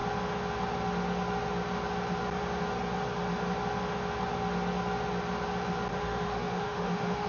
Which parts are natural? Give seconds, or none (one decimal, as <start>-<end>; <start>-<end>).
0.0-5.9